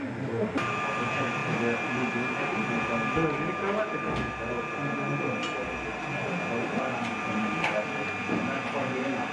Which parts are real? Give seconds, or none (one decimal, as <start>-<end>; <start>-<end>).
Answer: 0.0-9.3